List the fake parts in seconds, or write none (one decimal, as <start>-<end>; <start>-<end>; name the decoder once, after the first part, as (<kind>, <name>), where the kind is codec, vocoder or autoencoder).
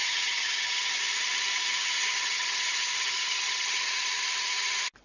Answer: 0.0-1.0 (vocoder, HiFi-GAN); 1.8-3.9